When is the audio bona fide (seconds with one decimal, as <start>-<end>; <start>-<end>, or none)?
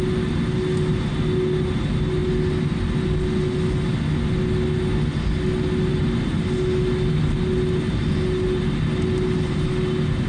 0.0-10.3